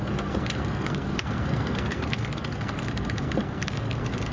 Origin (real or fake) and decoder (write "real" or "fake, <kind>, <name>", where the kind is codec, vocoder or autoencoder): fake, codec, SNAC